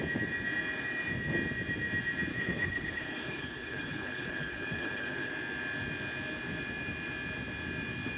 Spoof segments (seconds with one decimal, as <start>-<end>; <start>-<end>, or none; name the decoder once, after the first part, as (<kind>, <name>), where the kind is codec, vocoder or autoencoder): 2.3-5.3 (codec, HILCodec)